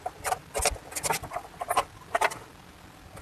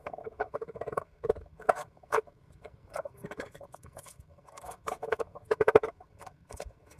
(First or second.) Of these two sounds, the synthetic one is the second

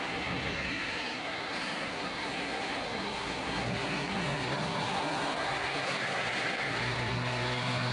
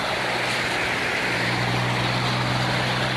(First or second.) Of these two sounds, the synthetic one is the first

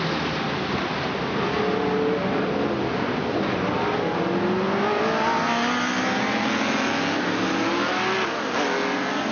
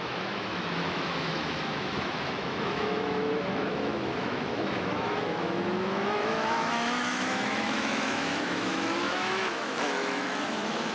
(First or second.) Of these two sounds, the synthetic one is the second